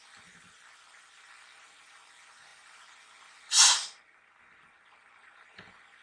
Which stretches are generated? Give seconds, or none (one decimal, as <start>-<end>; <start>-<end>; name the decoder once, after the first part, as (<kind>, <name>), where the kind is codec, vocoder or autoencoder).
none

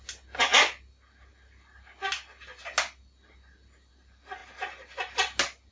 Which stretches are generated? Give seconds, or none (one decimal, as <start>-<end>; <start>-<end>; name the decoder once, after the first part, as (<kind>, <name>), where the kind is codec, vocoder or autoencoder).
none